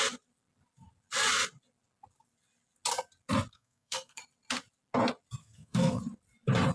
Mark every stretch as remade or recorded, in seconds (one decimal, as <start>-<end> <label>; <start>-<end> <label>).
0.0-3.5 recorded; 3.5-4.2 remade; 4.2-5.4 recorded; 5.4-6.0 remade; 6.0-6.7 recorded